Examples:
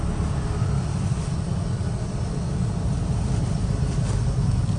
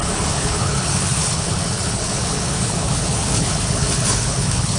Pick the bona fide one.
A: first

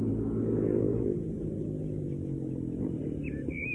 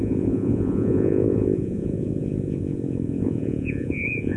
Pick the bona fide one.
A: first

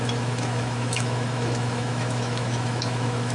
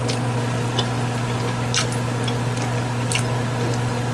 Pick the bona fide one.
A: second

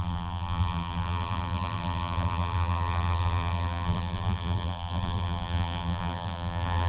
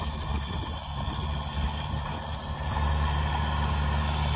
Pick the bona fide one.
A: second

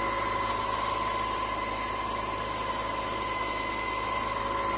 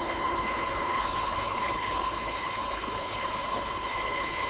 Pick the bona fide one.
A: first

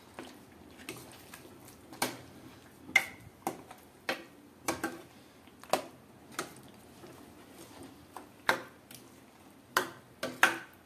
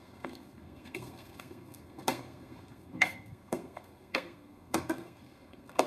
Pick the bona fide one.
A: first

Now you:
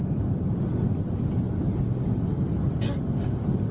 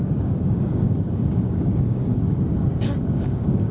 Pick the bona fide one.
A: first